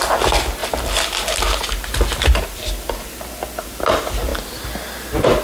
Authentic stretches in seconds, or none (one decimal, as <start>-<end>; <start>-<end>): 0.0-5.4